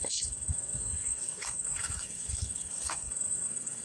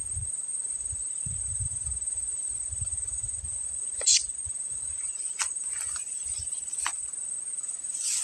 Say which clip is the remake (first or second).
first